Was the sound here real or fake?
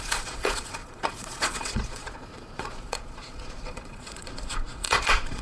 fake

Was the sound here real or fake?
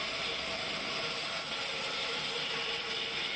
real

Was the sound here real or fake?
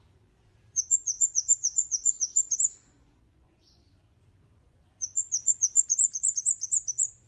fake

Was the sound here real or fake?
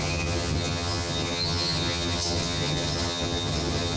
fake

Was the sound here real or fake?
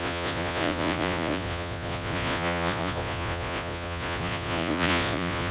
fake